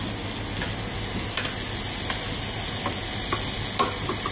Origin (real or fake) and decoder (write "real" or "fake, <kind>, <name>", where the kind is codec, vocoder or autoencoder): real